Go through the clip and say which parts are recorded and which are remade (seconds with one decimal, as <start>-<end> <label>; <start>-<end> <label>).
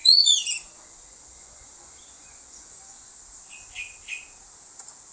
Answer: 0.0-3.1 remade; 3.1-5.1 recorded